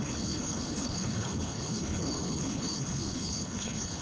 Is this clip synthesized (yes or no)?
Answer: yes